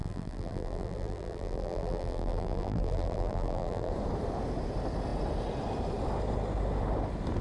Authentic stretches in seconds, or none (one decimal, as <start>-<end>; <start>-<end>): 3.9-7.4